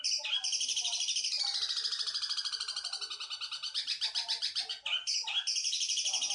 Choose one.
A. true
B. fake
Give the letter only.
A